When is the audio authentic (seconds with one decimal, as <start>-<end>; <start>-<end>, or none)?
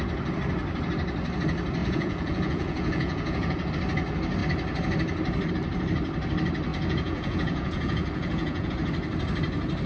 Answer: 0.0-1.8; 3.7-6.7; 8.7-9.9